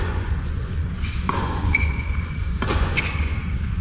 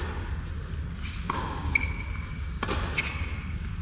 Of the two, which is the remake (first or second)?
first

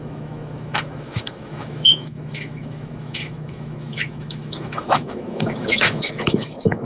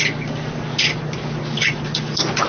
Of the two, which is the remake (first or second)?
first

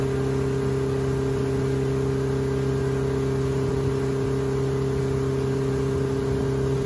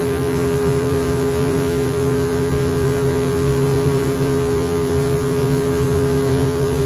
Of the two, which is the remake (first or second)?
second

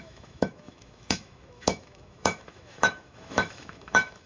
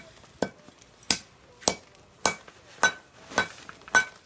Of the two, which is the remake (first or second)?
first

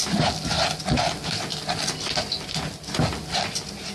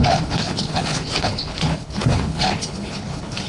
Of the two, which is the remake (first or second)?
second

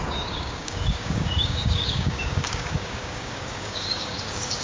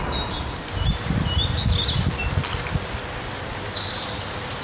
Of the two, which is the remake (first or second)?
first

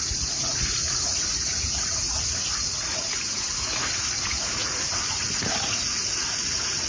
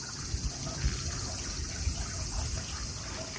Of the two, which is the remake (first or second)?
first